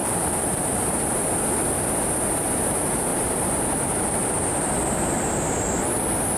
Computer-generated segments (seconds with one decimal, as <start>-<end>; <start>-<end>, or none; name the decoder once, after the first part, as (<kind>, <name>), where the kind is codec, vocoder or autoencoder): 0.0-0.8 (vocoder, BigVGAN v2); 3.1-3.6